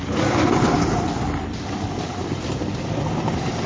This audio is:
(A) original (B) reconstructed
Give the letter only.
A